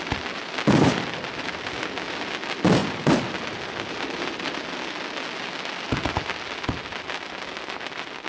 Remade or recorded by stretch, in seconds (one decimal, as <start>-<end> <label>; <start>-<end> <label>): 0.0-8.3 recorded